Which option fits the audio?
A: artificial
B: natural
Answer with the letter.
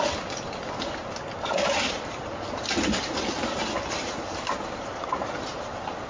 B